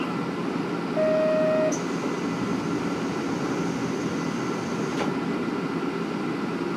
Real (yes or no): yes